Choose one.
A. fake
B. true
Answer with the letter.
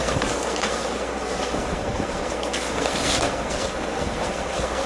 A